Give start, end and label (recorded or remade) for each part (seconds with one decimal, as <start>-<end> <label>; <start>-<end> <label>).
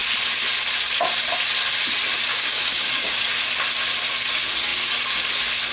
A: 0.0-2.3 recorded; 2.3-3.2 remade; 3.2-5.7 recorded